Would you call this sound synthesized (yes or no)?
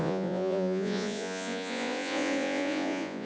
yes